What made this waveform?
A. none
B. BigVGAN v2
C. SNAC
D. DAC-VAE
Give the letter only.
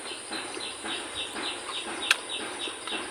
A